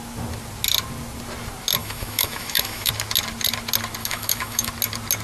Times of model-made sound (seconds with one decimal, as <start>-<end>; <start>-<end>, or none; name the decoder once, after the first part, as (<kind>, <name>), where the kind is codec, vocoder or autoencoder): 1.8-2.9 (autoencoder, DAC-VAE); 4.0-4.7